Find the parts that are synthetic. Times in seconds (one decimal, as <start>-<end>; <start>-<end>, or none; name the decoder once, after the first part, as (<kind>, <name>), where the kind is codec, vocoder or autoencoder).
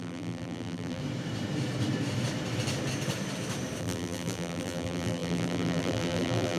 0.0-1.0 (vocoder, BigVGAN v2); 3.8-6.6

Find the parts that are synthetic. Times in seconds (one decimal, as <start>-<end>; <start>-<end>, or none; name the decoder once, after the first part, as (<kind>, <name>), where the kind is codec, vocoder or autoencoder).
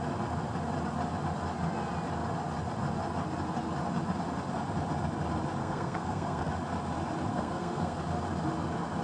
5.6-6.5 (codec, SNAC); 7.3-8.0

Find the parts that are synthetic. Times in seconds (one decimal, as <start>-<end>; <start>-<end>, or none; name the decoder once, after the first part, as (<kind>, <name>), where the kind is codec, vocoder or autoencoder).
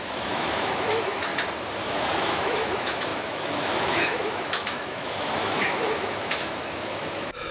0.0-1.3 (autoencoder, DAC-VAE); 2.2-7.5